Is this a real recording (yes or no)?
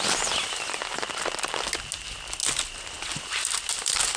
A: yes